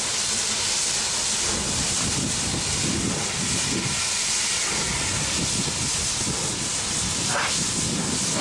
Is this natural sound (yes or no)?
no